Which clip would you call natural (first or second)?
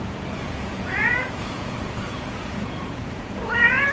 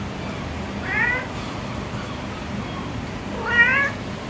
second